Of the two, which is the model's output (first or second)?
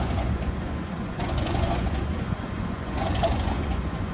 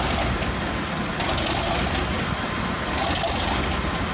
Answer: first